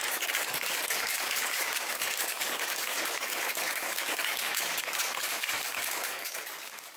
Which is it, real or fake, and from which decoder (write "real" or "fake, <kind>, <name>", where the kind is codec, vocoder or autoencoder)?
fake, codec, DAC